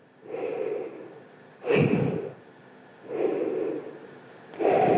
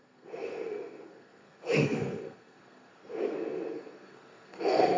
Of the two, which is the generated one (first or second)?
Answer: second